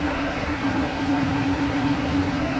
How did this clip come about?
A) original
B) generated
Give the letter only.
B